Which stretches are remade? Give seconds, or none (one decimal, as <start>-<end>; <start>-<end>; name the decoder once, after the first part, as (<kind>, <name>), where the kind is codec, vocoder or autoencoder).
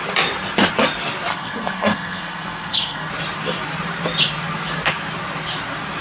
1.3-3.1 (codec, SNAC)